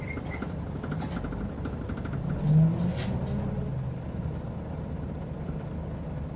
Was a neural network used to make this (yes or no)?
no